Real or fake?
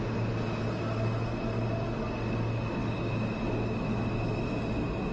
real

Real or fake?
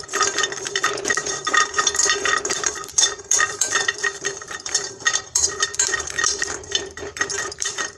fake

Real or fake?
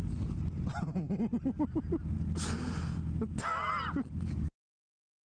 real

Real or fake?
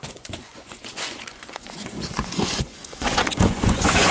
fake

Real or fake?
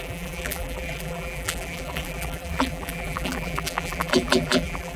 fake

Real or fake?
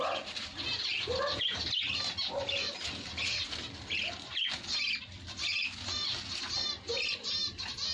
real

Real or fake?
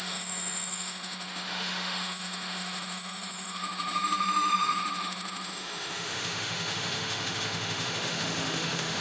fake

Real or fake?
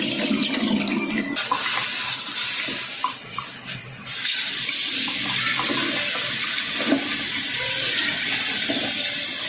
real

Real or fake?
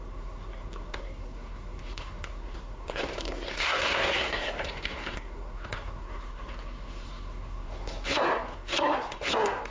fake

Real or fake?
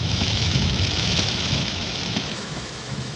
fake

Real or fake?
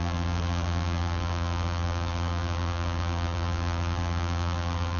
fake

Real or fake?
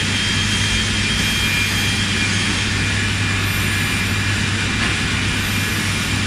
real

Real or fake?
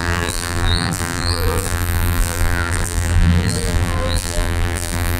fake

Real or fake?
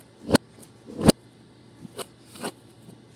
real